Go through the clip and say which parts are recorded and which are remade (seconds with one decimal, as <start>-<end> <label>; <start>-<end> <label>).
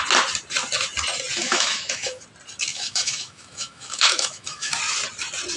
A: 0.0-1.4 recorded; 1.4-2.2 remade; 2.2-2.7 recorded; 2.7-4.8 remade; 4.8-5.6 recorded